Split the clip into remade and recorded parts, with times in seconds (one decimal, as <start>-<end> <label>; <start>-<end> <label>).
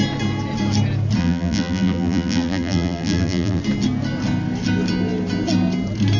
0.0-1.2 recorded; 1.2-3.6 remade; 3.6-6.2 recorded